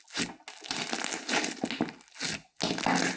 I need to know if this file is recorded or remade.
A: recorded